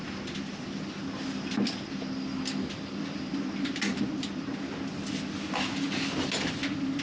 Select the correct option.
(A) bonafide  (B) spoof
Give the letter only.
A